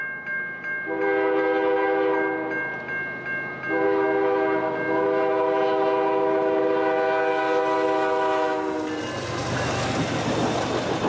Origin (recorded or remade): recorded